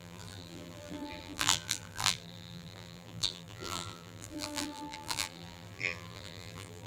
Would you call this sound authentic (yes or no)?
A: no